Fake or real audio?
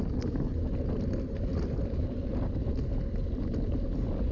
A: real